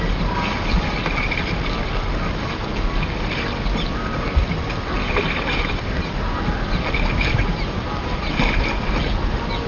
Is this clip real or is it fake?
real